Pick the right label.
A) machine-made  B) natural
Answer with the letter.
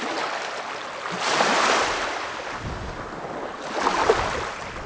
B